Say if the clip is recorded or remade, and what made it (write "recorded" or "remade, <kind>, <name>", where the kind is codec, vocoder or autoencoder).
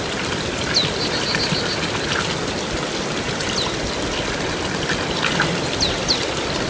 recorded